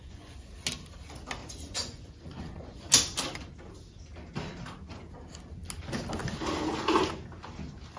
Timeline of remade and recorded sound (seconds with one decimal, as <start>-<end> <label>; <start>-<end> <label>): 0.0-0.5 remade; 0.5-1.4 recorded; 1.4-2.9 remade; 2.9-8.0 recorded

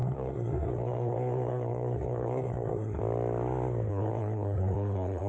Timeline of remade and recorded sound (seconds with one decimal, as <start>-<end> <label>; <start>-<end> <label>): 0.0-3.0 remade; 3.0-3.9 recorded; 3.9-5.3 remade

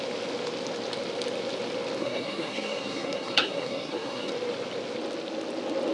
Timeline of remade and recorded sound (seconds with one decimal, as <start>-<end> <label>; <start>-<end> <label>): 0.0-2.0 recorded; 2.0-4.3 remade; 4.3-5.9 recorded

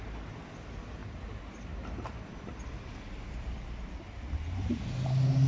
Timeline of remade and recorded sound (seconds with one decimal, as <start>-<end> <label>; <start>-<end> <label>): 0.0-5.5 recorded